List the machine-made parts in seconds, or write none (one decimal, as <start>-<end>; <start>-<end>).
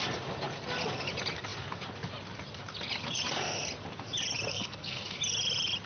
4.5-5.2